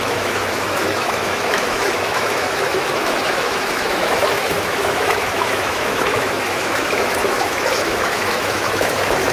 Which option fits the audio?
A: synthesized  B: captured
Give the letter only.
A